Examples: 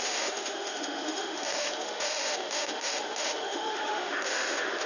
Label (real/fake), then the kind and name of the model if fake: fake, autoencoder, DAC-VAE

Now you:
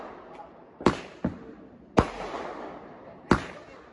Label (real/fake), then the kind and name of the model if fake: real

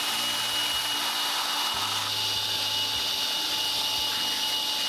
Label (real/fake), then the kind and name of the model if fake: real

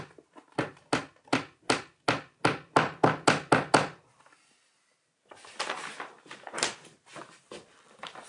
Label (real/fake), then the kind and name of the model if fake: real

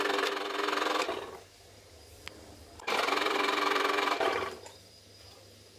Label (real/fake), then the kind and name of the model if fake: fake, vocoder, BigVGAN v2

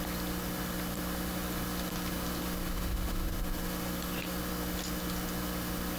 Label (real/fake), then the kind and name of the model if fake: real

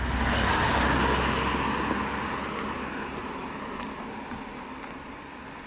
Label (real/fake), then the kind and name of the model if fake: real